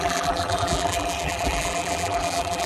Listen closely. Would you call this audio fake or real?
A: fake